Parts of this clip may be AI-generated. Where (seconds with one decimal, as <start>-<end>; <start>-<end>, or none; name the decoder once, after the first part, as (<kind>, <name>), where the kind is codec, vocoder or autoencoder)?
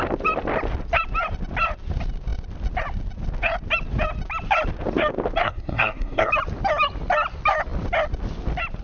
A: 5.4-6.3 (codec, SNAC)